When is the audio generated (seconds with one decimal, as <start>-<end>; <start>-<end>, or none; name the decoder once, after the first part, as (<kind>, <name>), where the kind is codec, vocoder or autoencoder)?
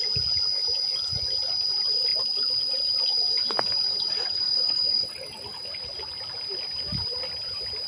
none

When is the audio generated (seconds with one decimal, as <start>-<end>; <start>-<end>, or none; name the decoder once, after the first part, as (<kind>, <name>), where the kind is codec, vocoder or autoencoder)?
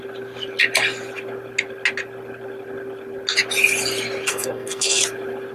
4.3-5.0 (codec, SNAC)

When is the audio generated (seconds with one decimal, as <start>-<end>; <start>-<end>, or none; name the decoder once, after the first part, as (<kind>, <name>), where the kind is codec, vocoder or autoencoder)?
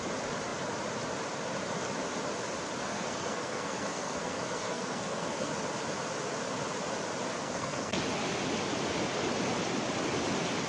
2.8-5.5 (codec, SNAC); 7.4-8.0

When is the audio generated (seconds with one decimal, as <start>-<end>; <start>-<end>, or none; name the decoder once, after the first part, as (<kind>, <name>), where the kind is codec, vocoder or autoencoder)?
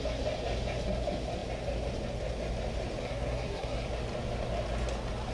3.0-3.9 (codec, SNAC)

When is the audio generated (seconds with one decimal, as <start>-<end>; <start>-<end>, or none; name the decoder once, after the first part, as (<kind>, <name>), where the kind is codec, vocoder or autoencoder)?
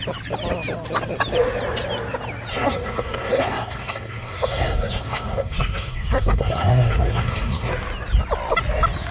2.5-7.7 (codec, SNAC)